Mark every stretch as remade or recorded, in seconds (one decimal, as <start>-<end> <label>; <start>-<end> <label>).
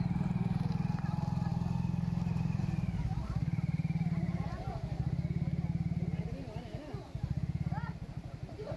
0.0-8.8 recorded